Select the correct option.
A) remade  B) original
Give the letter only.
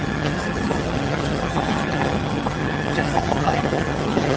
A